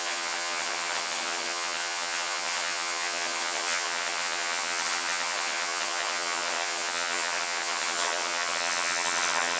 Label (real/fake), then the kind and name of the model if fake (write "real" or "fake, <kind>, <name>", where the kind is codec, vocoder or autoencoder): fake, vocoder, HiFi-GAN